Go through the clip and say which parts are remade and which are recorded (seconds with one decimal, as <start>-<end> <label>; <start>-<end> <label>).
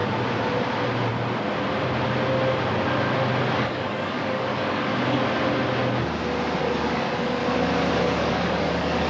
0.0-3.6 recorded; 3.6-4.9 remade; 4.9-6.6 recorded; 6.6-7.4 remade; 7.4-8.0 recorded; 8.0-9.1 remade